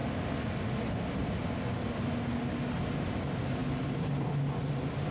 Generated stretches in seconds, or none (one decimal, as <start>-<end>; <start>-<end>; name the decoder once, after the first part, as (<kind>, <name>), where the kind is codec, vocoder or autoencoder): none